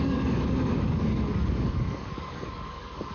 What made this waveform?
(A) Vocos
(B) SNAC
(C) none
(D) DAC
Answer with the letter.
D